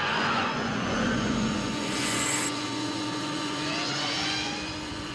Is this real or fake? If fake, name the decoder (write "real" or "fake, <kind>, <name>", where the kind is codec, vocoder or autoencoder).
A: fake, vocoder, Vocos